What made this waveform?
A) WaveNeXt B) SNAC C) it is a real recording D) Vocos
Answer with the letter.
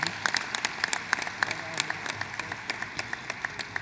C